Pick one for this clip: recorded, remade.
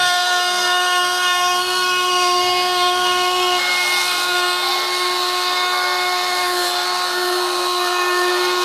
remade